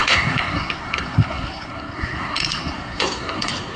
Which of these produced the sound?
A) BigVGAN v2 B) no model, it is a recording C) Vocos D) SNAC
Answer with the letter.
D